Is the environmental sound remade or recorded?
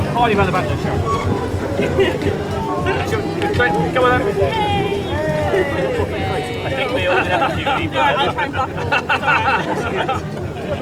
recorded